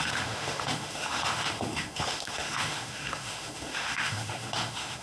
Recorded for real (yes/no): no